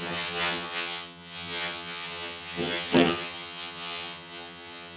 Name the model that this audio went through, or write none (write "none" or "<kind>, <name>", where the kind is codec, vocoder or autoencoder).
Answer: vocoder, HiFi-GAN